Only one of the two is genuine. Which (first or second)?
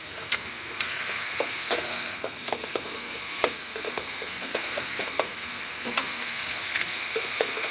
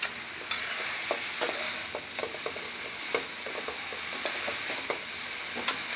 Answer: second